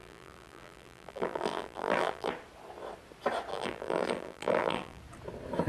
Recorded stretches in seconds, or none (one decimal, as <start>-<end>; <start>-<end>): 2.3-3.5; 5.0-5.7